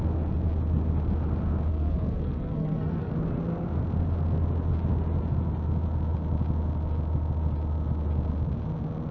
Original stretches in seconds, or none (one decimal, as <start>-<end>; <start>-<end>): 0.0-1.7; 3.1-9.1